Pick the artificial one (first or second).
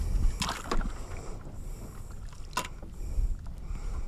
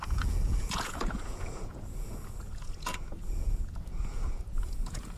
second